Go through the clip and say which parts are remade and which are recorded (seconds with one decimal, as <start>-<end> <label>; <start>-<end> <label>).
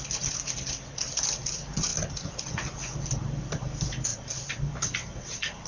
0.0-5.7 recorded